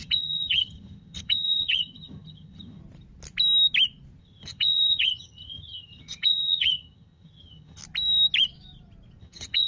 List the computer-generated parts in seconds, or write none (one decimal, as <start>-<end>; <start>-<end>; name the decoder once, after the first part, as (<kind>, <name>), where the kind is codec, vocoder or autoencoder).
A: 0.0-2.8 (vocoder, HiFi-GAN); 4.2-7.8; 9.2-9.7